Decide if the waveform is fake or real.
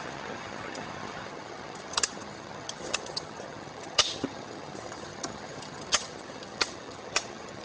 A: fake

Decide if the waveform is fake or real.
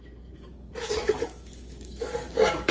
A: fake